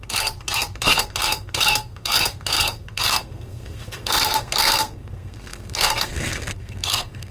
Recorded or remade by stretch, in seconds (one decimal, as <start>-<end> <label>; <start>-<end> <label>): 0.0-7.3 remade